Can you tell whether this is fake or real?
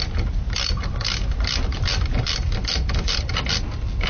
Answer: real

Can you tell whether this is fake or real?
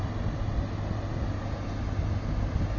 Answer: real